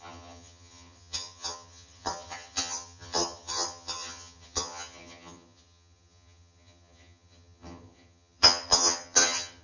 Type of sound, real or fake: fake